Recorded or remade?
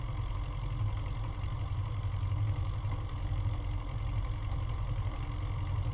recorded